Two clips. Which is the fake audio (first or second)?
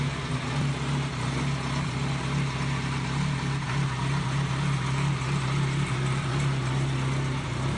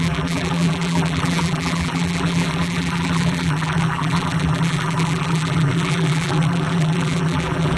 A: second